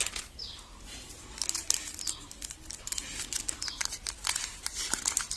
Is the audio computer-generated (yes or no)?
no